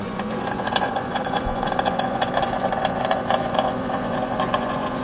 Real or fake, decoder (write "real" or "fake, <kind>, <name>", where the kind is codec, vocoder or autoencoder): fake, vocoder, Vocos